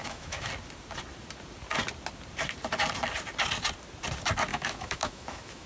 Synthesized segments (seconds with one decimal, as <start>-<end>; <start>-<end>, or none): 0.0-0.5; 4.5-5.7